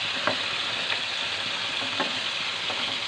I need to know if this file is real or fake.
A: real